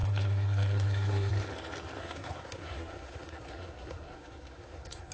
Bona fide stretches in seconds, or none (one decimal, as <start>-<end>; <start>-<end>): 1.3-2.0